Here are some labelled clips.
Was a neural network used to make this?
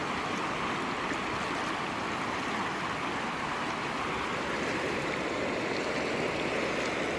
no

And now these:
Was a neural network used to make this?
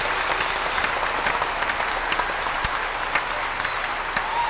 no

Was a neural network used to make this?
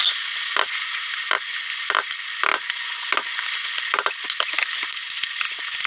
no